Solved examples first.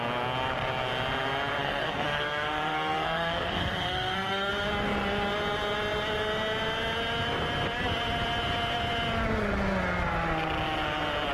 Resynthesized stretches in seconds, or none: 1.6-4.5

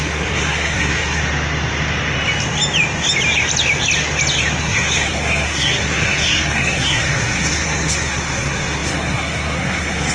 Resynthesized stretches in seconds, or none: 0.0-1.2; 4.6-10.1

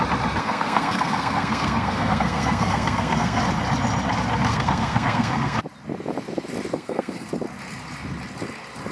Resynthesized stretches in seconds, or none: 0.4-3.4; 4.5-5.6; 6.7-7.3

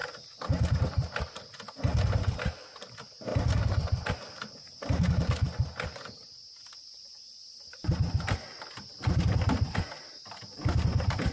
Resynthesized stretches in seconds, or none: none

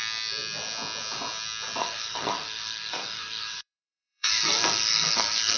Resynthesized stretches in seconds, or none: 1.8-5.6

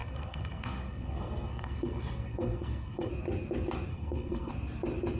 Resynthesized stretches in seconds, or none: 0.0-3.1; 3.9-4.5